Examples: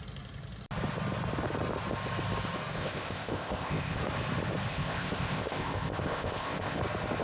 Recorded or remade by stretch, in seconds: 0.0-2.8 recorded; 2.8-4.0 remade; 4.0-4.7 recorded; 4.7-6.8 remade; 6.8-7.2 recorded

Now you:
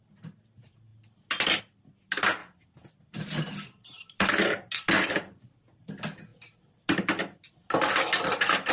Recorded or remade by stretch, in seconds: 0.0-8.7 recorded

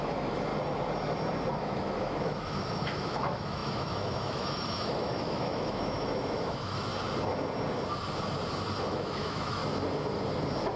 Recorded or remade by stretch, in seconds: 0.0-0.5 remade; 0.5-1.5 recorded; 1.5-6.9 remade; 6.9-8.8 recorded; 8.8-9.6 remade; 9.6-10.8 recorded

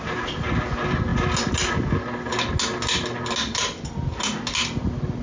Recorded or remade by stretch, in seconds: 0.0-5.2 recorded

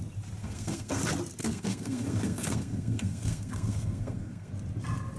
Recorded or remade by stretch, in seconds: 0.0-0.4 recorded; 0.4-1.0 remade; 1.0-1.4 recorded; 1.4-4.5 remade; 4.5-5.2 recorded

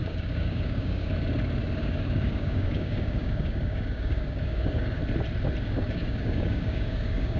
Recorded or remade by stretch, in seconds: 0.0-1.1 remade; 1.1-1.8 recorded; 1.8-5.0 remade; 5.0-5.6 recorded; 5.6-7.4 remade

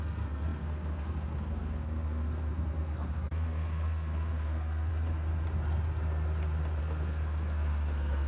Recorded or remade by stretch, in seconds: 0.0-4.9 remade; 4.9-6.8 recorded; 6.8-8.3 remade